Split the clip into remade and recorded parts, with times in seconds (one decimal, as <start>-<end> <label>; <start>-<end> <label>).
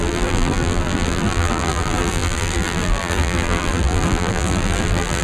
0.0-5.2 remade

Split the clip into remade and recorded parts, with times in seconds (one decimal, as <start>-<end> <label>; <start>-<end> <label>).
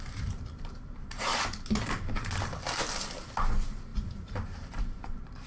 0.0-1.3 remade; 1.3-3.5 recorded; 3.5-5.5 remade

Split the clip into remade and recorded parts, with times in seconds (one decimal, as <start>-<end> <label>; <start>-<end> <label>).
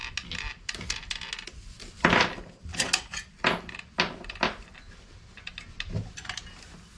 0.0-1.9 recorded; 1.9-5.5 remade; 5.5-7.0 recorded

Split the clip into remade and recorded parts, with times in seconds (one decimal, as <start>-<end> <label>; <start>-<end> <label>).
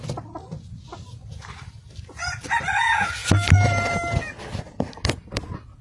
0.0-5.8 recorded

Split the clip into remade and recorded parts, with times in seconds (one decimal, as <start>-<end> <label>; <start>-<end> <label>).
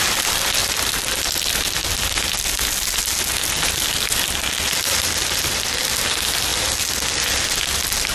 0.0-0.6 recorded; 0.6-1.2 remade; 1.2-8.1 recorded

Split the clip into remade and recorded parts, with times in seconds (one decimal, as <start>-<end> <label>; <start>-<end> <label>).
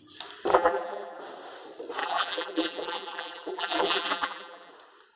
0.0-0.5 recorded; 0.5-1.2 remade; 1.2-2.0 recorded; 2.0-4.7 remade; 4.7-5.2 recorded